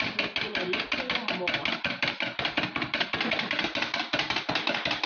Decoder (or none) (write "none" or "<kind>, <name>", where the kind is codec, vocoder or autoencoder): none